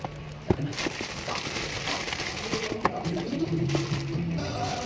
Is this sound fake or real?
real